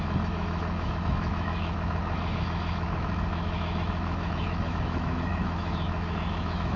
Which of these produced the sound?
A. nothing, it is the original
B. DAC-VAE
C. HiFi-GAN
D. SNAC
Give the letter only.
B